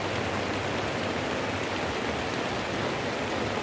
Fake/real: real